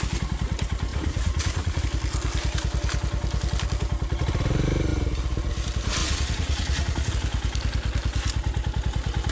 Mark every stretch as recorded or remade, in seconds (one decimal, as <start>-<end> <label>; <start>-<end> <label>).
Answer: 0.0-0.9 recorded; 0.9-1.8 remade; 1.8-6.0 recorded; 6.0-7.1 remade; 7.1-9.3 recorded